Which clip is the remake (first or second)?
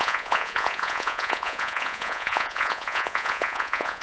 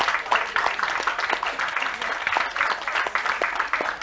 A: first